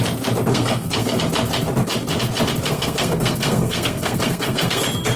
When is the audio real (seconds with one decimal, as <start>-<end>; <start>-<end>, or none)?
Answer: 0.0-0.5; 1.2-2.7; 4.8-5.2